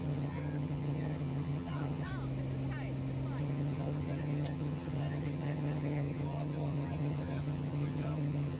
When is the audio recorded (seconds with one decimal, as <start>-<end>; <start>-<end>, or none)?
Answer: 2.1-3.4

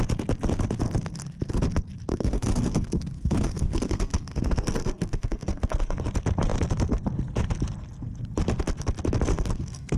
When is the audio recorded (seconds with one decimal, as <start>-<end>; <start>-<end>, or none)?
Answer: 0.0-2.1; 6.0-9.3

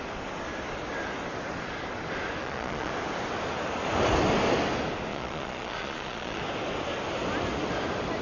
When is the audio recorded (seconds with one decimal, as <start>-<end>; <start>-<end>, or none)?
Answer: 0.0-2.4; 2.9-5.1; 6.4-8.2

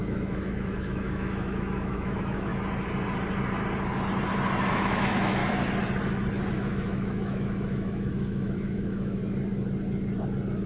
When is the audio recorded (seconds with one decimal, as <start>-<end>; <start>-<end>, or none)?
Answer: 2.5-4.7; 5.4-6.5; 9.2-10.7